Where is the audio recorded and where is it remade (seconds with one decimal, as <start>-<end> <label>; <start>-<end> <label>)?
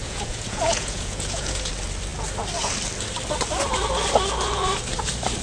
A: 0.0-1.7 remade; 1.7-5.4 recorded